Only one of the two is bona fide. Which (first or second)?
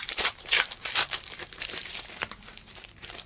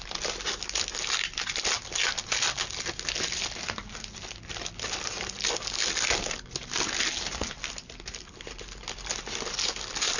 second